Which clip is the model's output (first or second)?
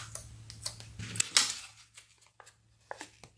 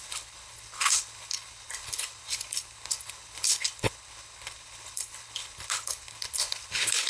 second